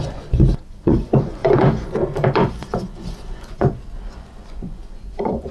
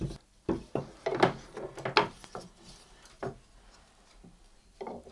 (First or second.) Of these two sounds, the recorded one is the second